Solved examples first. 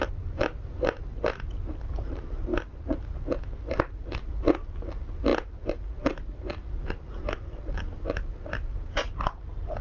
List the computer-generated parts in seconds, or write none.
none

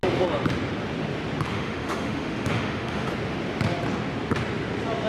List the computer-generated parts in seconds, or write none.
1.5-3.1

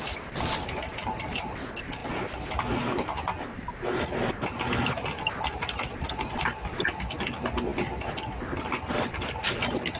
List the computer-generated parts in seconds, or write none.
none

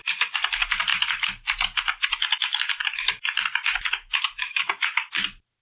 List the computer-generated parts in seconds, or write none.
none

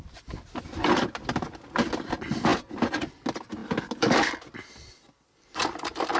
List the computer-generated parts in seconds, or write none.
none

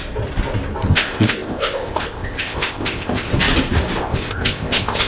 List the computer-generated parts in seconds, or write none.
0.9-3.3; 4.0-5.1

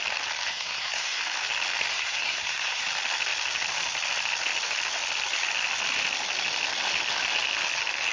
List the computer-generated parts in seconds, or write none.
0.5-1.2; 1.9-2.8

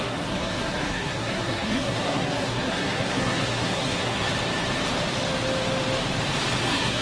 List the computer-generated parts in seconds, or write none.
0.0-4.3; 6.6-7.0